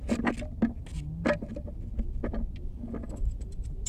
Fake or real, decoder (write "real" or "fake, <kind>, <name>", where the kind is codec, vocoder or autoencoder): real